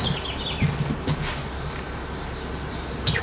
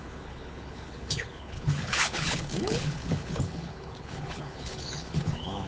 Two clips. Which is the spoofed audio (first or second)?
second